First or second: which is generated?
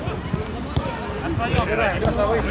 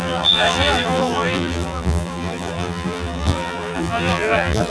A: second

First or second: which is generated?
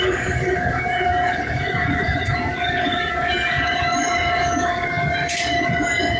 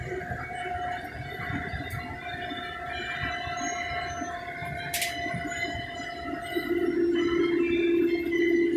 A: first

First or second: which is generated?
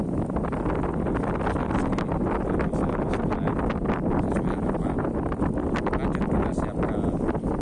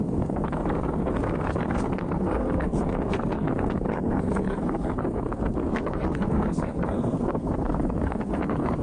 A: second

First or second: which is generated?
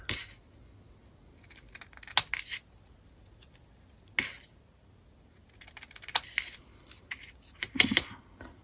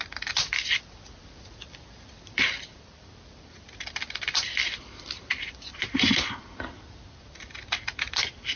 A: second